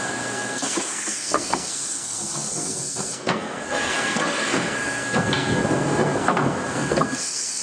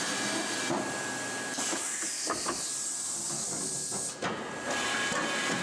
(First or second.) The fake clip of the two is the first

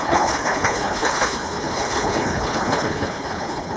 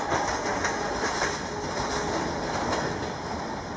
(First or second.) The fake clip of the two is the first